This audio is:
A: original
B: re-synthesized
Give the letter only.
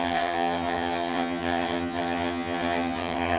B